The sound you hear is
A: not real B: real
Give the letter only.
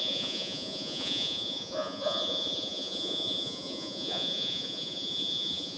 A